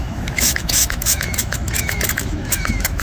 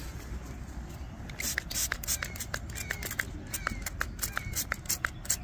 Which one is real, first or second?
second